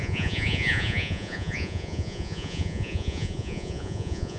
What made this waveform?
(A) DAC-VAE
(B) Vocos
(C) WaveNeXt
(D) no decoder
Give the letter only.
B